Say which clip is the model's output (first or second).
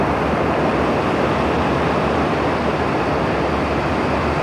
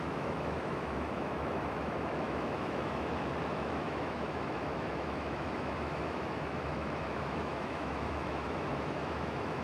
second